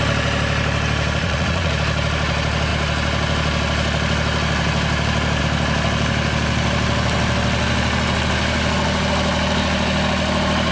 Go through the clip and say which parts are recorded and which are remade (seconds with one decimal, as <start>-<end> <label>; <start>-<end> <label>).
0.0-1.2 recorded; 1.2-1.7 remade; 1.7-10.7 recorded